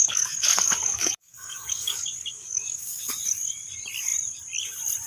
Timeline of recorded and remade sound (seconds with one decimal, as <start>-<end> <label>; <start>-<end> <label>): 0.0-3.1 remade; 3.1-5.1 recorded